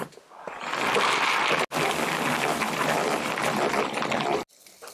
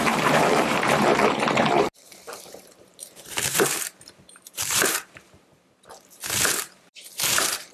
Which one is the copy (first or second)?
second